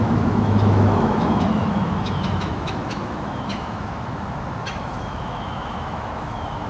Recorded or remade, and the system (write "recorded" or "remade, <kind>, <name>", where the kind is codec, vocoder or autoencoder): remade, autoencoder, DAC-VAE